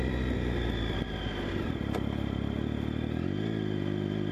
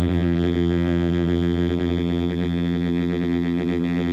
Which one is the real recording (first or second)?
first